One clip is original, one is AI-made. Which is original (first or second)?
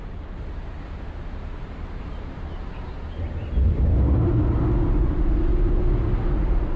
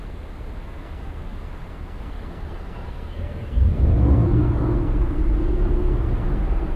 first